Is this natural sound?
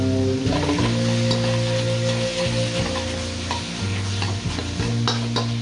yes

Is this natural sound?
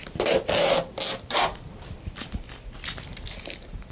yes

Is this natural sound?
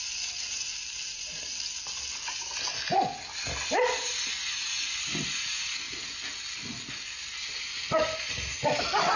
yes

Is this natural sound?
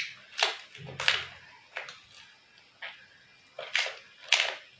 yes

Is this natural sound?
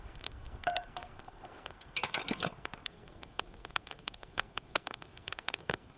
no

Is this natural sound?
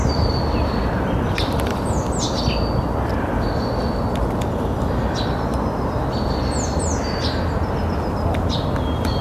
yes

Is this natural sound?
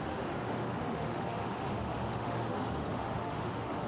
no